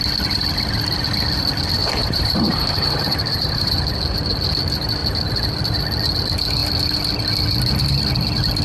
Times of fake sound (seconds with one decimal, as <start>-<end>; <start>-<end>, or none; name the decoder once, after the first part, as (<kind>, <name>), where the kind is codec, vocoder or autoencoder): 1.8-3.9 (vocoder, BigVGAN v2)